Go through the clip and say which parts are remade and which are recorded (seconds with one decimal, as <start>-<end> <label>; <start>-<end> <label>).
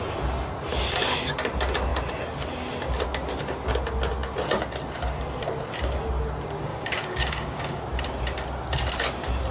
0.0-6.7 recorded; 6.7-7.9 remade; 7.9-9.5 recorded